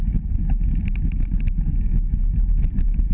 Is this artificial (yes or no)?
no